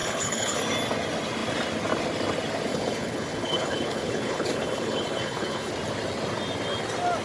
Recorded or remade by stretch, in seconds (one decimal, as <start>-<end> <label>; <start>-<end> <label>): 0.0-0.6 remade; 0.6-2.7 recorded; 2.7-5.7 remade; 5.7-7.2 recorded